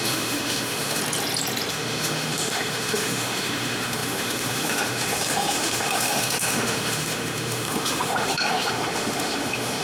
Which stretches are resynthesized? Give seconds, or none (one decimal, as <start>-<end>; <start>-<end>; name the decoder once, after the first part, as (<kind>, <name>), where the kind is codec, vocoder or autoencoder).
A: 0.0-1.0 (autoencoder, DAC-VAE); 1.7-9.8